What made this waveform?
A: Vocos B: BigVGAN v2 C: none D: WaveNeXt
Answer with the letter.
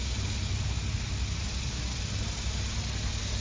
C